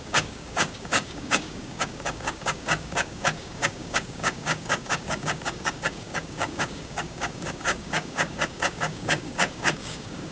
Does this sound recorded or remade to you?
remade